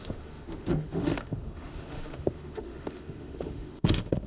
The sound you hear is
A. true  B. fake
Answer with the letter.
B